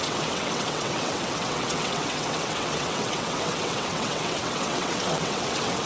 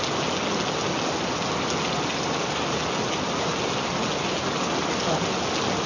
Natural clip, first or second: second